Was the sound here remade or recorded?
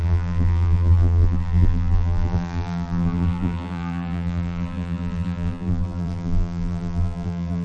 remade